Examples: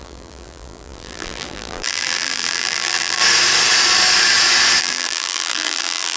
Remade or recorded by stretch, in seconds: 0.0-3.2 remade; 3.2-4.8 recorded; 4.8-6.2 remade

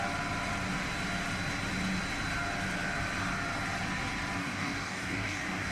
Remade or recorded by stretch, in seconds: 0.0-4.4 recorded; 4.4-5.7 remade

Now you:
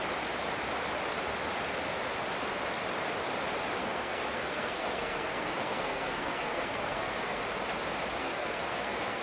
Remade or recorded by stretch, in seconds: 0.0-3.8 recorded; 3.8-7.4 remade; 7.4-8.2 recorded; 8.2-9.2 remade